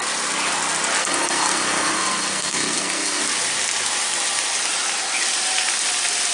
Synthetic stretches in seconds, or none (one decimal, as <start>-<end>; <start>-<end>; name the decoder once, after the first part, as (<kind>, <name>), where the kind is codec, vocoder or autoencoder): 1.0-3.2 (codec, SNAC)